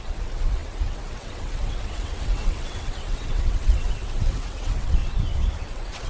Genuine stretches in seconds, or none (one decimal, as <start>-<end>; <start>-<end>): 5.0-5.6

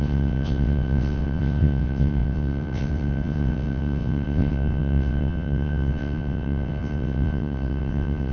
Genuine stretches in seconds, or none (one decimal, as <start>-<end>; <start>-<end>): none

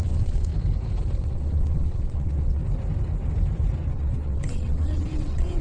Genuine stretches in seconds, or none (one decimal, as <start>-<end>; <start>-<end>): 0.5-1.2; 2.6-3.9

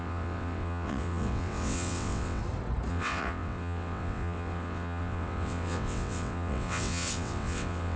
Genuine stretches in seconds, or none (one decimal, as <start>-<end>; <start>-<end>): 2.4-2.9

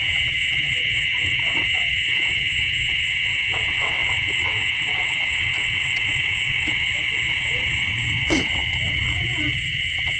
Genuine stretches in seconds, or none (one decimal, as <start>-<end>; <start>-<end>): 6.9-7.4

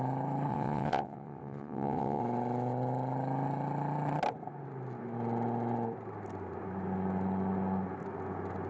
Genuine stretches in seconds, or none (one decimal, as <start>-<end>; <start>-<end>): 0.0-0.5; 2.2-8.7

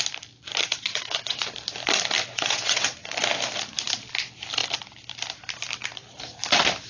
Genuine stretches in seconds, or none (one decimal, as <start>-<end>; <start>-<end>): 0.0-0.9; 1.4-2.3; 3.1-6.9